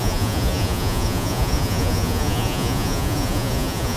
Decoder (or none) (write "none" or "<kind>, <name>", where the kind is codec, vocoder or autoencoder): vocoder, Vocos